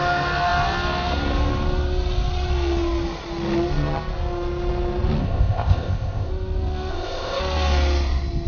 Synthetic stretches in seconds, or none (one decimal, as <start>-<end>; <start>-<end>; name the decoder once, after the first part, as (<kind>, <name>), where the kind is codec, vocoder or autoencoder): 5.2-6.3 (codec, ZipCodec); 6.9-7.4